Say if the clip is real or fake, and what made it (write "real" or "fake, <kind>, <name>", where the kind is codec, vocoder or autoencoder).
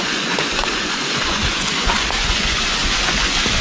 fake, vocoder, Vocos